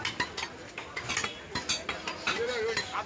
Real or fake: real